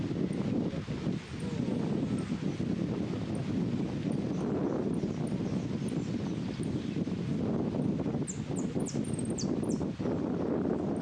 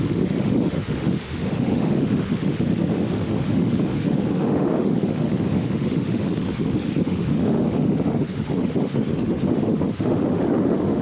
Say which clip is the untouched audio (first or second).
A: first